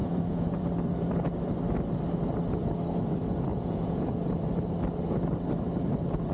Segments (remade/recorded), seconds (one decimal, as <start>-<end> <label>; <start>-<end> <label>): 0.0-0.7 remade; 0.7-3.5 recorded; 3.5-4.1 remade; 4.1-6.3 recorded